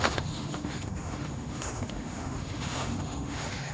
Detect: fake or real fake